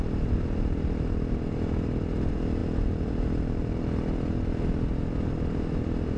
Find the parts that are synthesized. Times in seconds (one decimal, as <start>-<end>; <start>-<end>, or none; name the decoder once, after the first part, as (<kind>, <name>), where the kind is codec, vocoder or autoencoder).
none